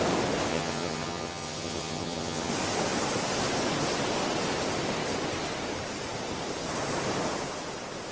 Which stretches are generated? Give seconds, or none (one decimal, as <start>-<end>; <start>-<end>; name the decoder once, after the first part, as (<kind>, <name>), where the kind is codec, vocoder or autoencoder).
0.5-2.5 (vocoder, HiFi-GAN)